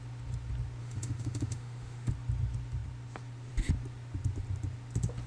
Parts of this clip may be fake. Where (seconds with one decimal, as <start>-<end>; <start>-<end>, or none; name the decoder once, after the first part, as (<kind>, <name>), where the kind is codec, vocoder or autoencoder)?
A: 0.8-2.1 (autoencoder, DAC-VAE)